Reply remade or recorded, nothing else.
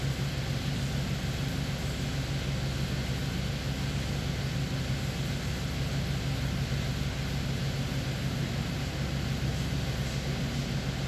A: recorded